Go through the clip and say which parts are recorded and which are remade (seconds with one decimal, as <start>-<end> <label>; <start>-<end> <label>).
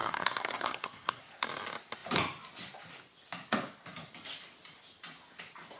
0.0-1.2 remade; 1.2-5.8 recorded